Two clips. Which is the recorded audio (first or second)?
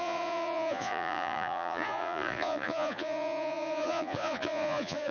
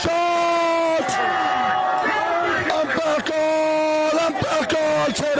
second